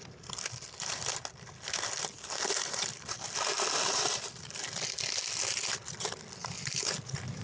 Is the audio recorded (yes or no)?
yes